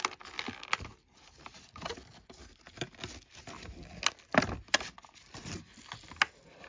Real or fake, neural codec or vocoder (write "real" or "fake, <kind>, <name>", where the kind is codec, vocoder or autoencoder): real